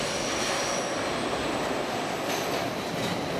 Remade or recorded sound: recorded